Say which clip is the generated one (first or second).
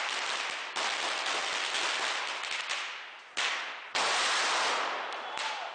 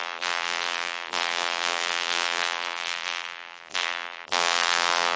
second